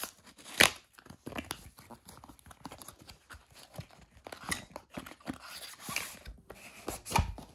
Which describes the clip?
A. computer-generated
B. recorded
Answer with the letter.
B